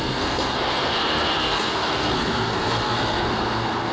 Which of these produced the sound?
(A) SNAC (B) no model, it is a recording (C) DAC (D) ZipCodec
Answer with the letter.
A